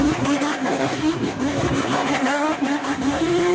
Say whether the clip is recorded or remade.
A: remade